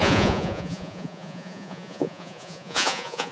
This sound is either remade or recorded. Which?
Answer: remade